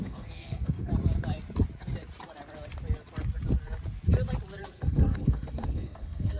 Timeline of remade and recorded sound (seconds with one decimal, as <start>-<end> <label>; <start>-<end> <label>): 0.0-0.9 remade; 0.9-4.6 recorded; 4.6-6.4 remade